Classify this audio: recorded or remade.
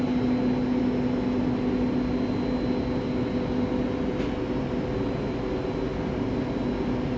recorded